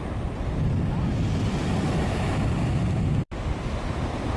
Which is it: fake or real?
real